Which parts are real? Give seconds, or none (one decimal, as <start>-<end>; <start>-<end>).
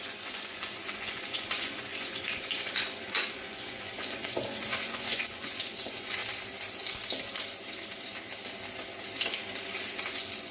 6.2-9.9